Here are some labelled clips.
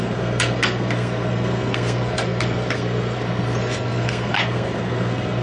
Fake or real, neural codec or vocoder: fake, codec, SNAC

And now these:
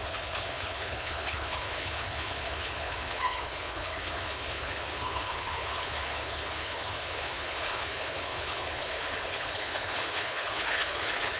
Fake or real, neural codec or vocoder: fake, codec, HILCodec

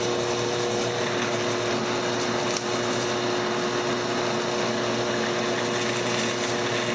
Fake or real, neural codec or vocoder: real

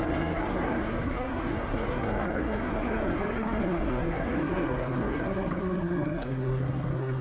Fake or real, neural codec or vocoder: fake, codec, SNAC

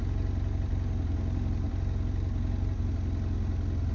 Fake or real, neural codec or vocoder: real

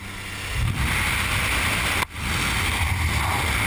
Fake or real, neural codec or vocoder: real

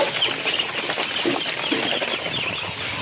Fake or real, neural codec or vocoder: real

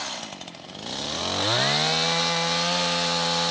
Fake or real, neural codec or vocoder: real